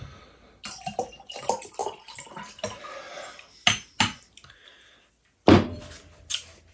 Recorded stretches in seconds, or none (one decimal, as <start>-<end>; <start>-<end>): 0.0-6.7